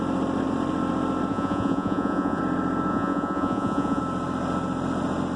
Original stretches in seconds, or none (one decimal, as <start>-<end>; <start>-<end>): 0.0-1.3; 2.4-2.9; 4.0-5.4